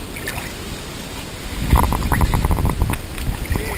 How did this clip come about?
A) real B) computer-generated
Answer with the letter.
A